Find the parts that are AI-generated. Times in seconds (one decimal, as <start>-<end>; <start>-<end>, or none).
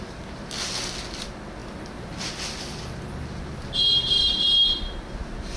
none